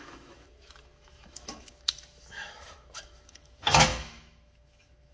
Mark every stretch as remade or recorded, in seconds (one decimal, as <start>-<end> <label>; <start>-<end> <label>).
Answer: 0.0-5.1 remade